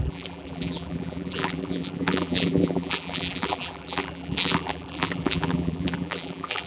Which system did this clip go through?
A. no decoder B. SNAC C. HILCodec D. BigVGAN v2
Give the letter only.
D